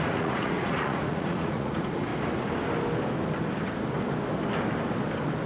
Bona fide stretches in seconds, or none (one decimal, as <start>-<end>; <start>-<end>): 2.1-5.5